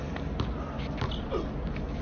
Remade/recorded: recorded